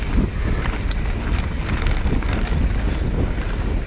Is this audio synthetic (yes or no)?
no